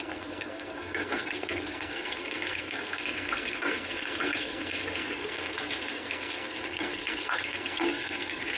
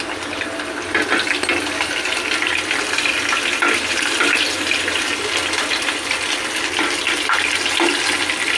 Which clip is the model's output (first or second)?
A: first